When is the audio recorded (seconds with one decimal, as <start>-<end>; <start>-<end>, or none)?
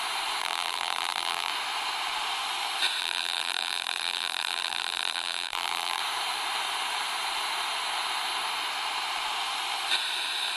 0.0-0.4; 1.5-3.0; 6.0-10.6